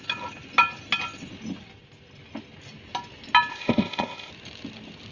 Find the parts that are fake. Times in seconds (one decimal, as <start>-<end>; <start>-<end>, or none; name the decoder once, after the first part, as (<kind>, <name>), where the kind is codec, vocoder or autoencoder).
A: 3.5-4.3 (codec, ZipCodec)